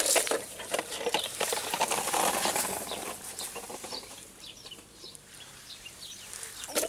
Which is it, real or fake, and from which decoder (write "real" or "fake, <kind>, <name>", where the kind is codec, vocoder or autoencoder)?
fake, vocoder, BigVGAN v2